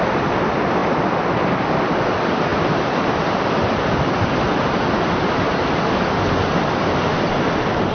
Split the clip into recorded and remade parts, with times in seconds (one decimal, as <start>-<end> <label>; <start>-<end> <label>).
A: 0.0-7.9 recorded